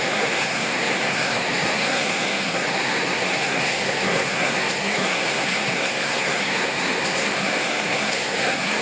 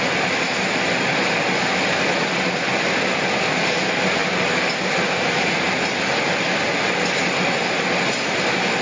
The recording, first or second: second